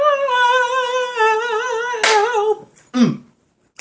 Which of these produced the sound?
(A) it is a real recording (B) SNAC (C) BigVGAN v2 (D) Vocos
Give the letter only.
A